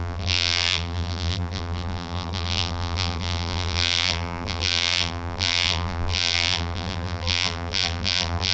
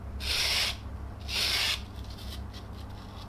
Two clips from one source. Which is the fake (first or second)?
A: first